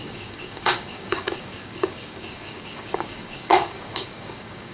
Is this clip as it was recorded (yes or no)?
no